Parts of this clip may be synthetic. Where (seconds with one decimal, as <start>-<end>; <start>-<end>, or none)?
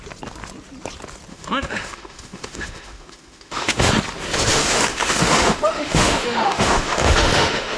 1.3-3.9; 4.5-7.8